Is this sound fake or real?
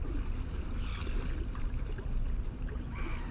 real